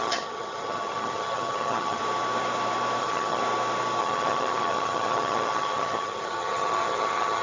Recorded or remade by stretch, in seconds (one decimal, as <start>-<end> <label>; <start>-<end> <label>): 0.0-2.0 remade; 2.0-3.0 recorded; 3.0-3.4 remade; 3.4-4.0 recorded; 4.0-7.4 remade